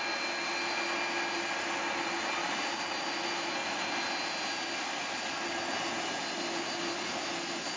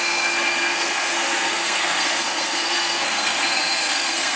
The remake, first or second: second